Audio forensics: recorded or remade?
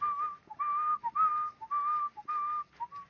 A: recorded